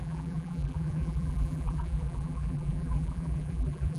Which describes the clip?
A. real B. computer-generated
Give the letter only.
B